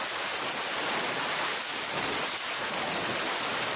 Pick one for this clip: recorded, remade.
recorded